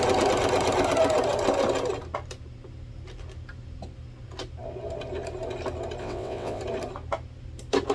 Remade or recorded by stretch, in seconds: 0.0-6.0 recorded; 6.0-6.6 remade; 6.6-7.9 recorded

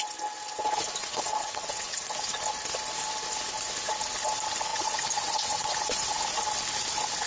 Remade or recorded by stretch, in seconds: 0.0-1.0 recorded; 1.0-2.0 remade; 2.0-4.7 recorded; 4.7-6.2 remade; 6.2-7.3 recorded

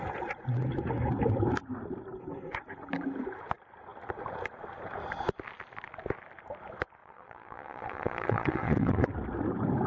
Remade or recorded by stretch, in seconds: 0.0-7.0 recorded; 7.0-9.1 remade; 9.1-9.9 recorded